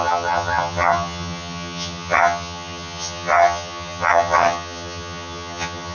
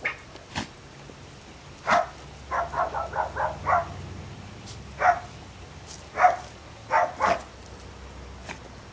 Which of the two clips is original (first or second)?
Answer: second